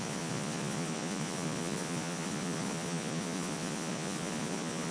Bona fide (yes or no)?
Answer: no